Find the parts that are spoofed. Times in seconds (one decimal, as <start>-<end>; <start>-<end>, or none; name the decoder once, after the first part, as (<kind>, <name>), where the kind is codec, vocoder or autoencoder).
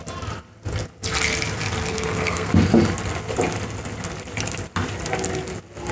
1.9-2.5 (codec, SNAC)